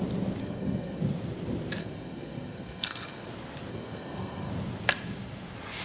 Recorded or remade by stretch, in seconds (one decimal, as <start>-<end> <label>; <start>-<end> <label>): 0.0-0.4 recorded; 0.4-1.0 remade; 1.0-1.8 recorded; 1.8-3.3 remade; 3.3-3.7 recorded; 3.7-4.5 remade; 4.5-5.8 recorded